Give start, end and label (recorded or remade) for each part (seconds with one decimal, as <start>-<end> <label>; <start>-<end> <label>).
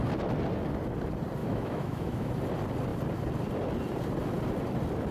0.0-1.4 recorded; 1.4-2.3 remade; 2.3-5.1 recorded